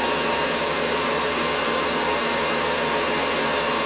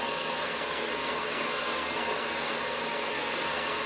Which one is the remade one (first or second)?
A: second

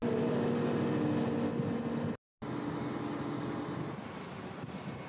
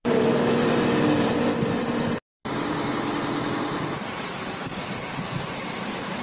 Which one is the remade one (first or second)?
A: second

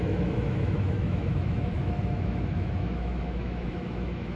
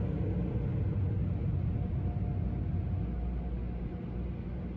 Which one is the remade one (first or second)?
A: first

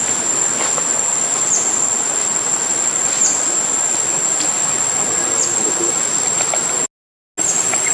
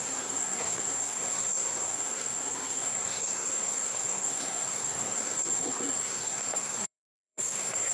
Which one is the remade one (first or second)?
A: second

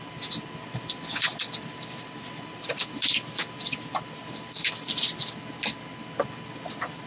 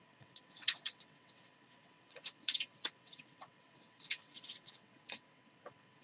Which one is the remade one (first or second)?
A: second